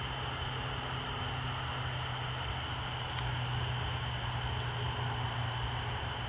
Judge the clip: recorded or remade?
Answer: recorded